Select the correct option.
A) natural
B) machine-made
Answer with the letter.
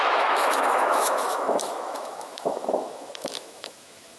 B